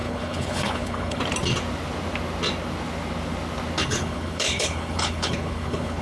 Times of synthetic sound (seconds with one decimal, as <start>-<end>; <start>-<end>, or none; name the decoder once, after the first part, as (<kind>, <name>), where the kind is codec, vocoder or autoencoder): 0.0-1.2 (codec, HILCodec); 3.8-6.0